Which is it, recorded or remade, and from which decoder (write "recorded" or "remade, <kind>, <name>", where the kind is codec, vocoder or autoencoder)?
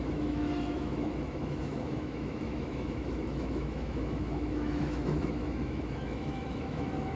remade, autoencoder, DAC-VAE